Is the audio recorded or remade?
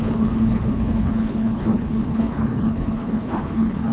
remade